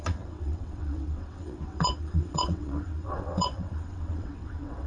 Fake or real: fake